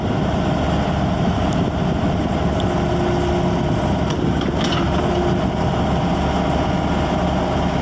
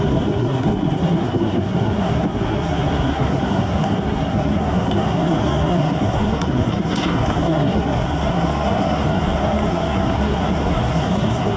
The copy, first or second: second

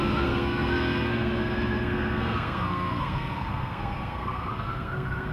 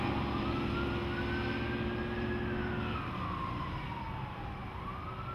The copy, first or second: first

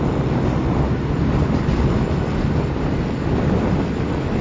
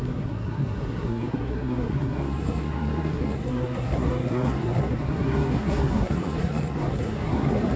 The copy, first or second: second